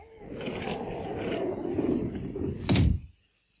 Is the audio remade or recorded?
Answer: recorded